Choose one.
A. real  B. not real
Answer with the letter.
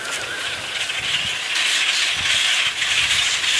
A